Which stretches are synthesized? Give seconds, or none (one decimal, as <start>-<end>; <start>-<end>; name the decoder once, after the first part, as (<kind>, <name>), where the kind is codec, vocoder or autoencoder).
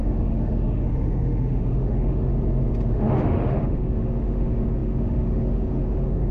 0.0-2.3 (autoencoder, DAC-VAE); 2.9-6.3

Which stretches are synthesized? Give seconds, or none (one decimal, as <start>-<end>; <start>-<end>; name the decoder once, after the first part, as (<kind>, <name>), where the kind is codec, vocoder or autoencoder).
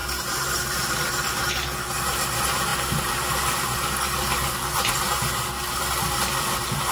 none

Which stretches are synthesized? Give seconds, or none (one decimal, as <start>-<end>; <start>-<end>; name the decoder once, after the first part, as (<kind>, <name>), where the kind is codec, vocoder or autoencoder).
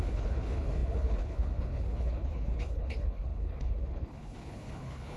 0.0-5.2 (codec, HILCodec)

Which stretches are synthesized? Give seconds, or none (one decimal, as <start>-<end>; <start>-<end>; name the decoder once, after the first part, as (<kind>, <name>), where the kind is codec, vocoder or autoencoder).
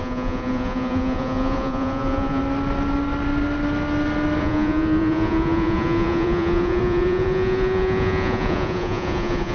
0.0-2.4 (vocoder, Vocos); 4.4-9.5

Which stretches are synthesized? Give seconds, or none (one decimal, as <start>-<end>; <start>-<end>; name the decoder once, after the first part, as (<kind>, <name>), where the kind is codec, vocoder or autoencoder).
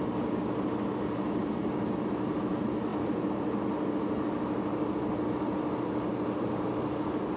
none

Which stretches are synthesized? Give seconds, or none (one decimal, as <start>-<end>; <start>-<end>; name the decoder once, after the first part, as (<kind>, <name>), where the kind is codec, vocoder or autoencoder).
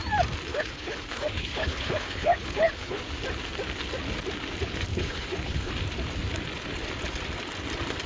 0.5-3.0 (codec, HILCodec); 4.9-5.7